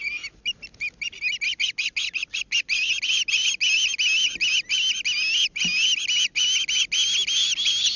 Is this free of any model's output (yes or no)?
yes